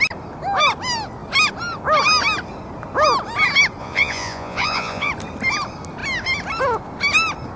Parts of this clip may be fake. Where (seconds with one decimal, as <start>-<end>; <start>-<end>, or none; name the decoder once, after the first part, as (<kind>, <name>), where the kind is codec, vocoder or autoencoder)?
3.8-5.1 (vocoder, Vocos)